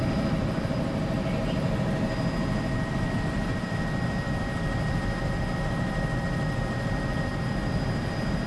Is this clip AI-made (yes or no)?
yes